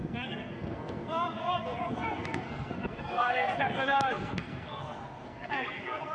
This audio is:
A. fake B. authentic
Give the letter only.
A